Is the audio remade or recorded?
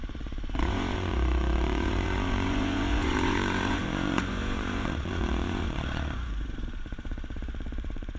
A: remade